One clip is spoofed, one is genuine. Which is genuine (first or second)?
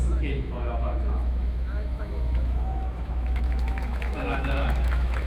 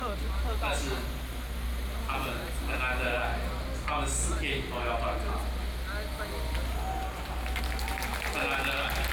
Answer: second